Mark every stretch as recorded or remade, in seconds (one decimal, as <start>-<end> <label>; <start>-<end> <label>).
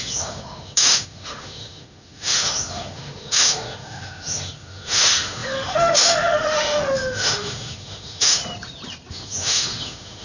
0.0-8.4 remade; 8.4-9.1 recorded; 9.1-10.2 remade